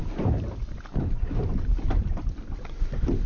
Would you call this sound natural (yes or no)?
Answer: yes